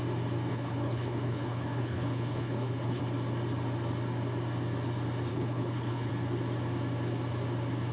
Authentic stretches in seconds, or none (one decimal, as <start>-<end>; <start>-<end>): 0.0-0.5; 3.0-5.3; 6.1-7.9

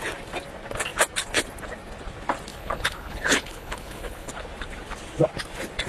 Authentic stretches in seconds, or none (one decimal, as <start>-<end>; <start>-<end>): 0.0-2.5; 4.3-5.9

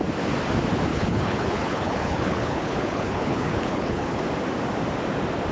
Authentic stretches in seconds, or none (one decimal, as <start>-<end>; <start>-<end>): 0.0-0.9; 4.2-5.5

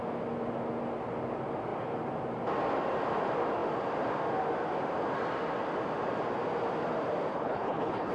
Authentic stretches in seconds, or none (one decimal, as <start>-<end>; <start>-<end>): 0.0-7.3

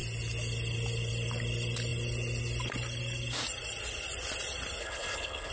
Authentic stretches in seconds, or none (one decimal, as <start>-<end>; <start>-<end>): 0.0-4.8